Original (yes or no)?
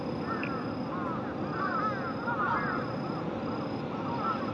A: yes